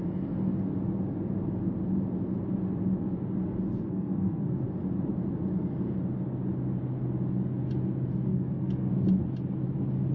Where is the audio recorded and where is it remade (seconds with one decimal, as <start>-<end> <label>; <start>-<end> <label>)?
0.0-3.9 recorded; 3.9-4.5 remade; 4.5-8.3 recorded; 8.3-8.9 remade; 8.9-10.1 recorded